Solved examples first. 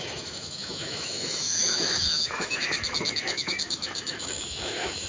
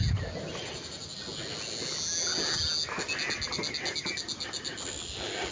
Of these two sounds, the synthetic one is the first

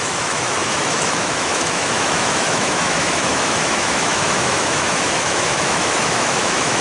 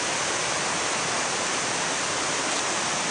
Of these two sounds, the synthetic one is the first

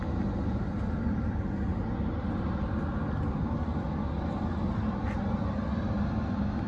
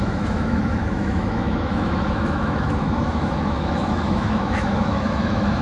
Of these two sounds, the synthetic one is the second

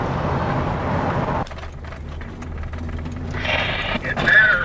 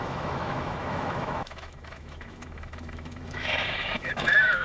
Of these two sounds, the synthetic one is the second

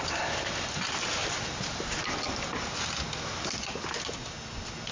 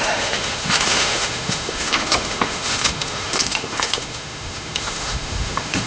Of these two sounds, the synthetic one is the second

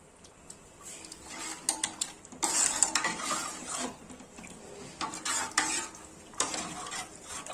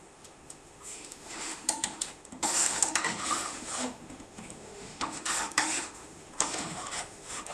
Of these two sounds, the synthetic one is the second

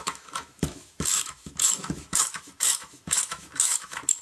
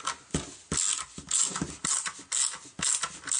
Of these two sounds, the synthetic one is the first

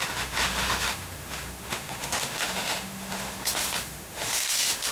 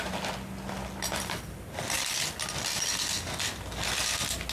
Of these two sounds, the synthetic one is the first